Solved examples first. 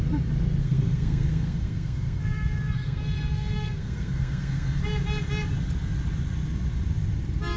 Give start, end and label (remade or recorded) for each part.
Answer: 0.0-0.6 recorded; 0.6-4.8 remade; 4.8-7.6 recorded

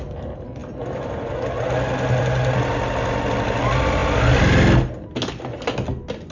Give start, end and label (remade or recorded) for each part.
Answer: 0.0-6.3 recorded

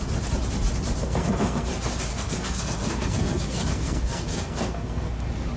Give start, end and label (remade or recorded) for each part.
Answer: 0.0-1.0 recorded; 1.0-1.7 remade; 1.7-2.1 recorded; 2.1-5.1 remade; 5.1-5.6 recorded

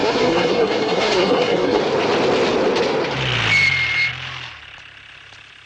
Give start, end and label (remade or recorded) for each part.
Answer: 0.0-1.8 remade; 1.8-5.7 recorded

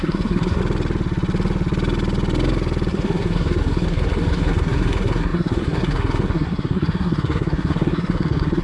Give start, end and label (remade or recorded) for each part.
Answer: 0.0-0.6 remade; 0.6-2.9 recorded; 2.9-8.6 remade